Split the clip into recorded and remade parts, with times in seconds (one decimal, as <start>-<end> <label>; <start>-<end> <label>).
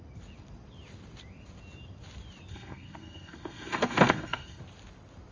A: 0.0-2.5 recorded; 2.5-4.6 remade; 4.6-5.3 recorded